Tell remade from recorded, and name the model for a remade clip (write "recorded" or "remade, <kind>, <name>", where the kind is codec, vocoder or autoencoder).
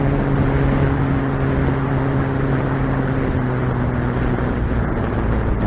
recorded